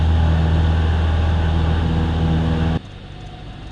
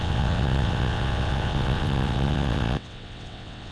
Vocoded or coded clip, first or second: second